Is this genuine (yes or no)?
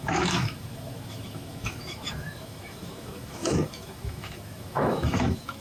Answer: no